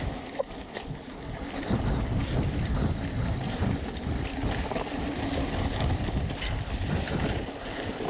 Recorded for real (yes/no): yes